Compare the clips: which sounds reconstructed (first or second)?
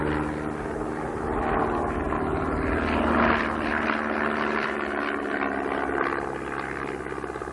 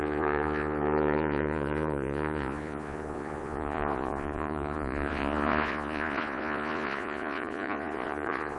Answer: second